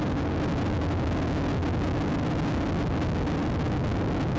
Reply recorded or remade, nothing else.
recorded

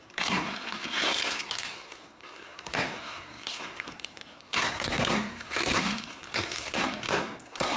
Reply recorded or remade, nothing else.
remade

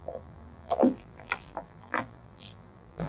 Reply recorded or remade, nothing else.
remade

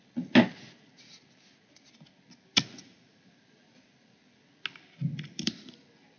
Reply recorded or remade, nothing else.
recorded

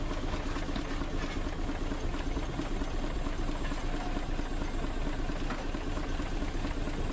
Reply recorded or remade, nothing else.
recorded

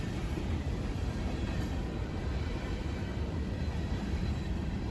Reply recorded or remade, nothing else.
remade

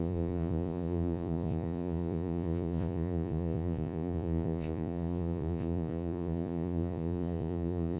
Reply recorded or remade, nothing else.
remade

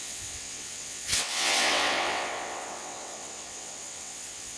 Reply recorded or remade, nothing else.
remade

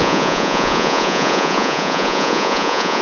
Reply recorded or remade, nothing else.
remade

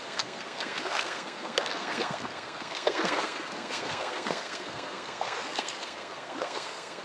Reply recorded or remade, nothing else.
remade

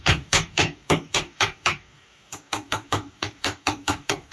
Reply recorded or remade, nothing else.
remade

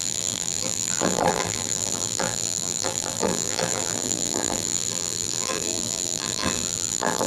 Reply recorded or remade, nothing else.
remade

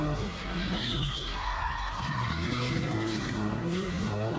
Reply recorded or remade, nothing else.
remade